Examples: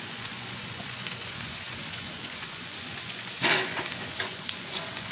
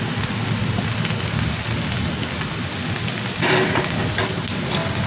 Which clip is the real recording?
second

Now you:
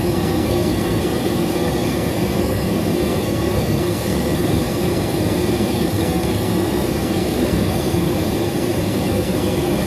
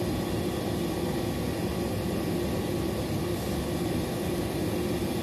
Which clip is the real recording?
second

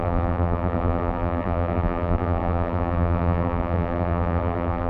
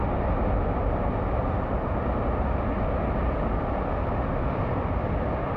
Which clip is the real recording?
second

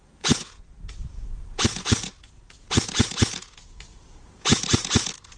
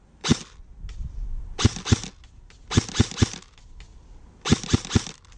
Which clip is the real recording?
second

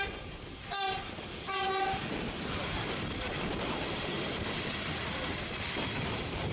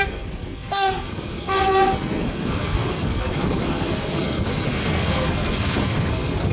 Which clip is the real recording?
first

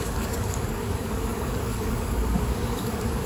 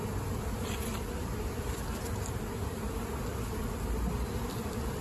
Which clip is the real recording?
second